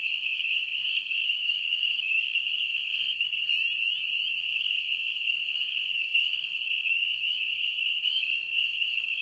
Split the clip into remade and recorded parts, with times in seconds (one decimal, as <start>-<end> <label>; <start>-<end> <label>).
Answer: 0.0-3.5 remade; 3.5-4.4 recorded; 4.4-9.2 remade